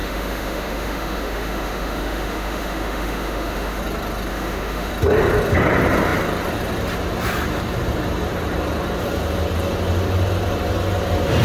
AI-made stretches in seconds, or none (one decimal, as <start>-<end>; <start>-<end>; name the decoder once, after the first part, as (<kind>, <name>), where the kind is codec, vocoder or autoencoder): 0.0-3.8 (autoencoder, DAC-VAE); 4.3-4.9